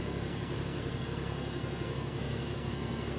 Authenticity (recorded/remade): remade